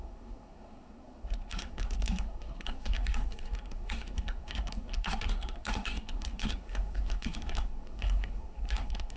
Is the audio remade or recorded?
remade